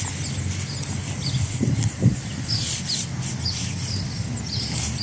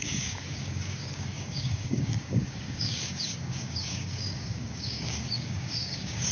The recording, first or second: first